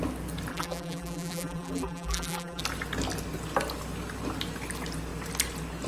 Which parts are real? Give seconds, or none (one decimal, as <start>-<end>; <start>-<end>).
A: 0.0-0.5; 2.6-5.9

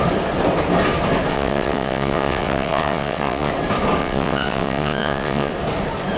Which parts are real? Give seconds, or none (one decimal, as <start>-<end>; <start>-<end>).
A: 0.0-1.3; 3.5-4.0; 5.5-6.2